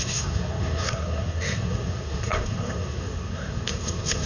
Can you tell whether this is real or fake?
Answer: fake